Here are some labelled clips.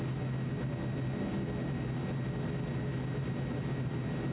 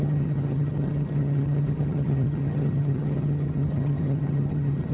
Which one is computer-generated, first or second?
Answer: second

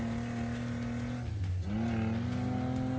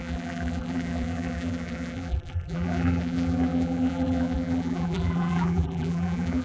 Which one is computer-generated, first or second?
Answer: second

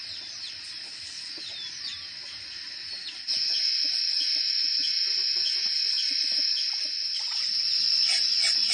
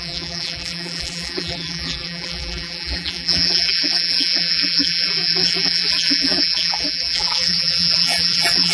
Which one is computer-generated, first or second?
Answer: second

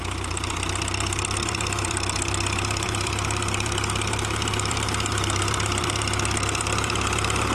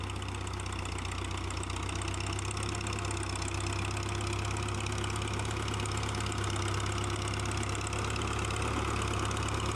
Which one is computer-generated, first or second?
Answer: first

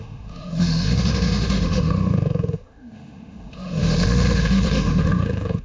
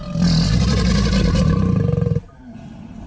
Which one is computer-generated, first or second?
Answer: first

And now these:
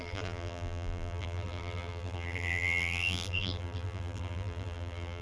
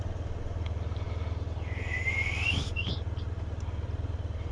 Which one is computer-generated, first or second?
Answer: first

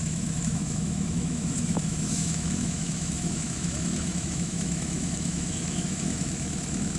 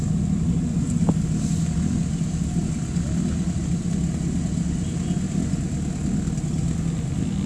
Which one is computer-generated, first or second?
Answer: first